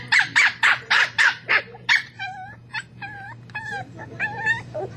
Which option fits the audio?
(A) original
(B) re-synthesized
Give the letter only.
B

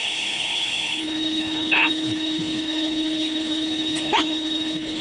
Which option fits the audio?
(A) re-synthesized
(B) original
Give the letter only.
A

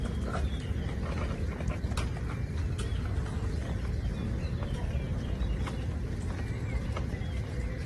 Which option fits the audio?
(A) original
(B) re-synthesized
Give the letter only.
A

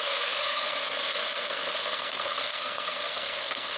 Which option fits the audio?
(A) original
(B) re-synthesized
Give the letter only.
B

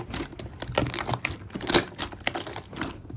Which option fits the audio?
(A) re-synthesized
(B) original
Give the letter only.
B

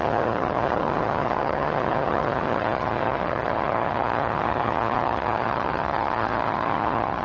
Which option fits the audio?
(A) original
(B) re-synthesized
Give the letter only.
B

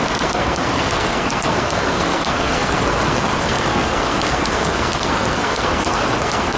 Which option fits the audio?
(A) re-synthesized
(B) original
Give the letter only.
A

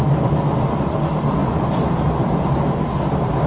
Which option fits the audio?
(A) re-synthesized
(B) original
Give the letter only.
B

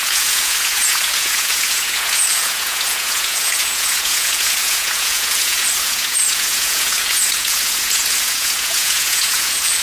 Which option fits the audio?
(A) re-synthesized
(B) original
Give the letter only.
A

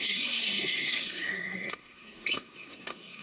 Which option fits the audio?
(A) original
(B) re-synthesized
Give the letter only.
B